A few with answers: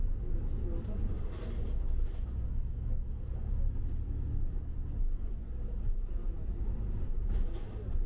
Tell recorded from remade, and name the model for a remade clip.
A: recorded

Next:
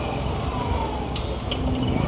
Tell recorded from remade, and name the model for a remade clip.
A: recorded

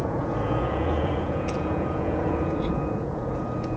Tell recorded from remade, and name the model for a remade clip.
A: remade, vocoder, Vocos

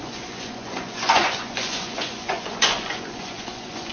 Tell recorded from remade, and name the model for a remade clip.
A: remade, vocoder, Vocos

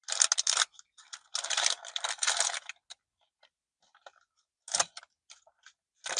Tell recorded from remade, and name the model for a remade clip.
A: recorded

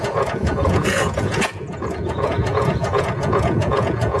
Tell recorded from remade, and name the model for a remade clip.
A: remade, vocoder, Vocos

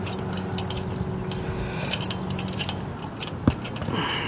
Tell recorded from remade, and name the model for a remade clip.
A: recorded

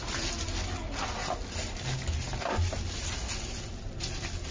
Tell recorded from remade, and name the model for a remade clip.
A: recorded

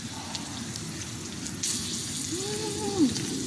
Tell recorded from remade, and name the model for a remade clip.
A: recorded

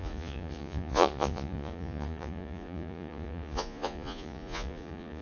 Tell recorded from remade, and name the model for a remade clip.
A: remade, vocoder, Vocos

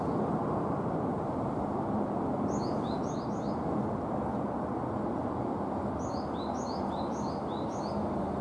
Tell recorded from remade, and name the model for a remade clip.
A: recorded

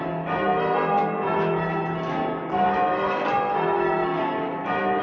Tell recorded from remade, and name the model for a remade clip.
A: recorded